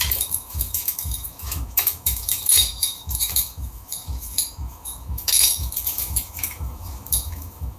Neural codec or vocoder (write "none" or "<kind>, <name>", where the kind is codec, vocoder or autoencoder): autoencoder, DAC-VAE